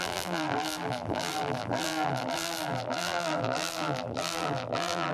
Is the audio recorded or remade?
remade